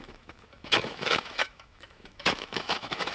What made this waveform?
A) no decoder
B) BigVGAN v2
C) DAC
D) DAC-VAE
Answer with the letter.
D